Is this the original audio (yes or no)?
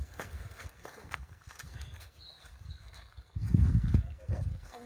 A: no